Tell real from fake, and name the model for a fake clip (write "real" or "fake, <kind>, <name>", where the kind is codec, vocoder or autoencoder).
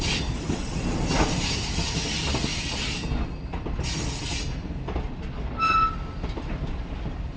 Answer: real